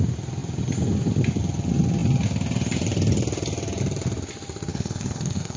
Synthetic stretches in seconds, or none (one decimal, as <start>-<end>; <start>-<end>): 4.7-5.6